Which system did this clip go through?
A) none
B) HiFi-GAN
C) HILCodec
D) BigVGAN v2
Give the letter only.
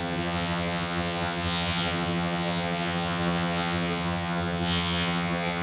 B